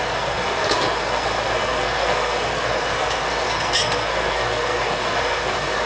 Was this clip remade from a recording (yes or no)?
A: yes